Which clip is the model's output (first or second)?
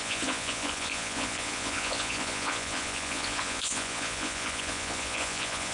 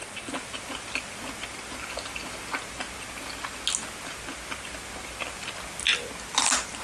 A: first